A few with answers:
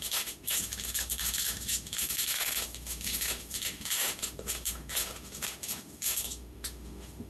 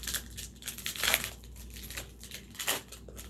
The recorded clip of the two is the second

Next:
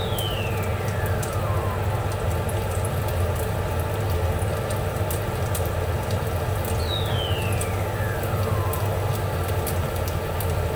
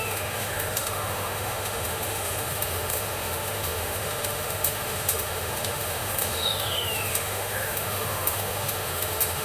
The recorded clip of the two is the first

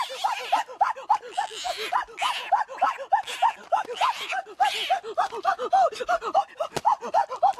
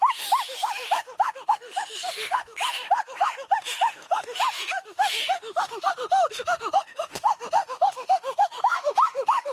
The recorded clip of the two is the first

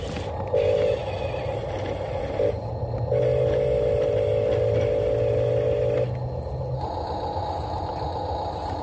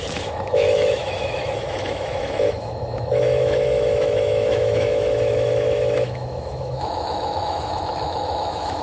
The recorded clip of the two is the first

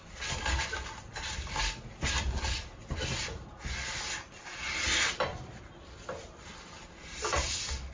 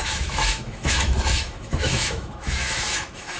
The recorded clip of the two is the first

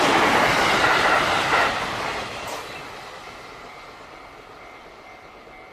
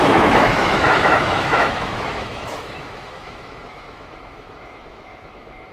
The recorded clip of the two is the first